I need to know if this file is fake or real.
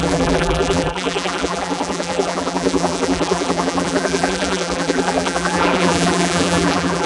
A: fake